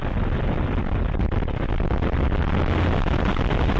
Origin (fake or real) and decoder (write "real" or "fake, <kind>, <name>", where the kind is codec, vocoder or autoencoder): real